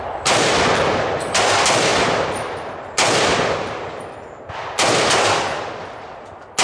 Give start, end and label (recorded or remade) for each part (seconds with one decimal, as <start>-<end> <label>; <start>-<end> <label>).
0.0-6.6 recorded